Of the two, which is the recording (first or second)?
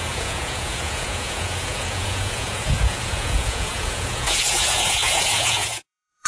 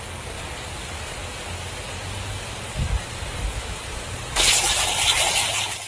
second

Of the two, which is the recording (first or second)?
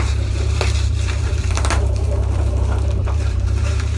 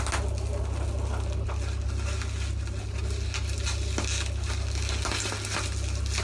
second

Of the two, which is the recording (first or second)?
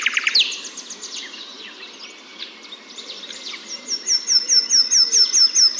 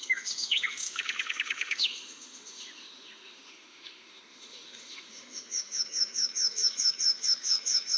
first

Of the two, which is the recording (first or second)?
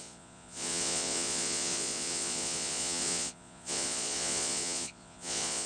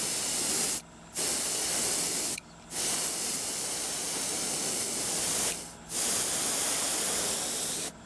second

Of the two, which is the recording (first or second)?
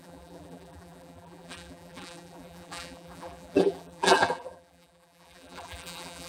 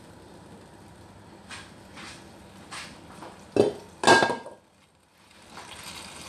second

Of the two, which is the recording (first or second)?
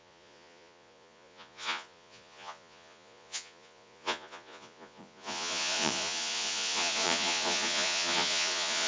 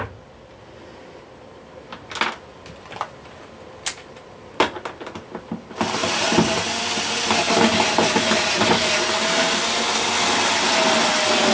second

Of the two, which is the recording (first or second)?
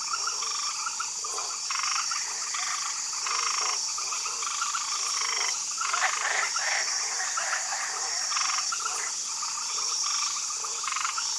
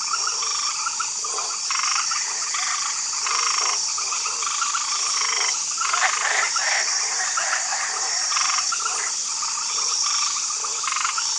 first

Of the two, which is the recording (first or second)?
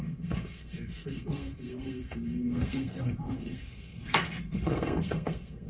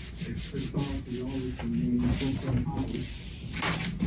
second